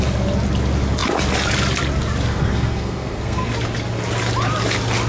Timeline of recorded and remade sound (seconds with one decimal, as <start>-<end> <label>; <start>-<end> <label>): 0.0-2.3 recorded; 2.3-3.5 remade; 3.5-5.1 recorded